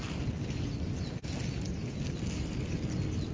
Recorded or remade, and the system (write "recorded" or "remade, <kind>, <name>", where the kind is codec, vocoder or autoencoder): recorded